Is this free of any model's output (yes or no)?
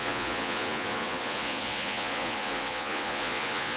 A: no